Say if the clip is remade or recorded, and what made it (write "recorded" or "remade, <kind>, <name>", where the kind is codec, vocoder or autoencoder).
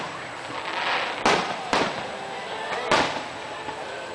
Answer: recorded